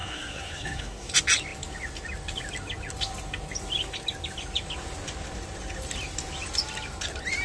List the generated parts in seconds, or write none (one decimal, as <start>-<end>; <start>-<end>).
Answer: 0.0-1.1